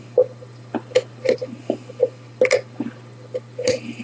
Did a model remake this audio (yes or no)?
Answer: no